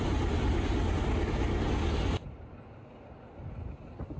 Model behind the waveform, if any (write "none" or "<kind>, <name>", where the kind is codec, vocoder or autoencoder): none